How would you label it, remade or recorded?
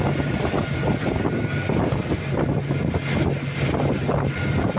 recorded